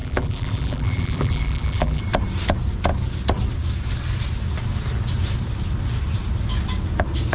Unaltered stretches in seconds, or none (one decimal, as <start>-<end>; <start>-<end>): 2.0-7.3